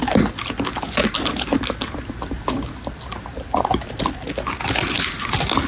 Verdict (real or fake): real